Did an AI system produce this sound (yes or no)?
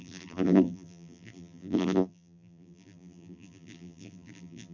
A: yes